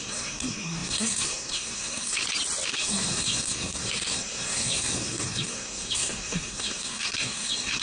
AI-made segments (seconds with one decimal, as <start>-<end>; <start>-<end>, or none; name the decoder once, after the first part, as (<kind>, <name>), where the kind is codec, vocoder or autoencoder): 0.0-2.2 (codec, SNAC); 2.7-7.8

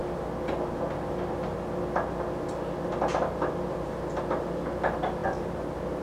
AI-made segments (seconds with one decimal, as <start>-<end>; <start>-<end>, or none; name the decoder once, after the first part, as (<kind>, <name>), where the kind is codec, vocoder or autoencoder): none

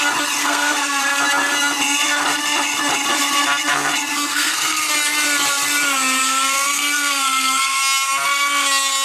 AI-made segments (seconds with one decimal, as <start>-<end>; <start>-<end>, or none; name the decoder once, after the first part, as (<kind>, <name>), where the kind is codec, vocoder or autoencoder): 0.4-1.0 (codec, SNAC); 4.3-4.9; 6.2-7.8

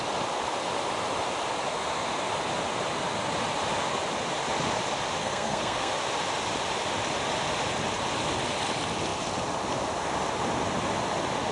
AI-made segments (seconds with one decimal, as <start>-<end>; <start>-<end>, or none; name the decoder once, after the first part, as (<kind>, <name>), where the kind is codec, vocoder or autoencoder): 5.2-5.9 (codec, SNAC)

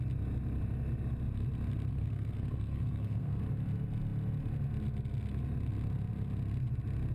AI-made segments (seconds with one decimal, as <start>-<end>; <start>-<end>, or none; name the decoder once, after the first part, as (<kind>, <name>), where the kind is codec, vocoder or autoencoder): 1.9-3.4 (codec, SNAC)